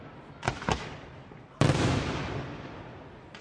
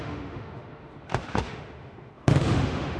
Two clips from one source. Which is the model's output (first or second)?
second